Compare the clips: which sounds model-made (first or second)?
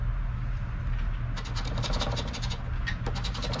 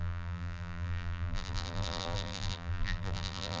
second